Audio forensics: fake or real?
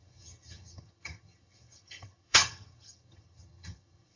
fake